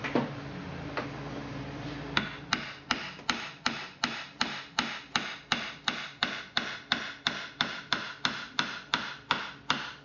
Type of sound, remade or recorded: recorded